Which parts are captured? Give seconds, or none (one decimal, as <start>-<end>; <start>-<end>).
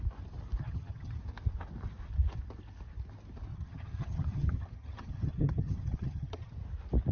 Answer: 0.0-0.6; 1.2-3.5; 6.5-7.1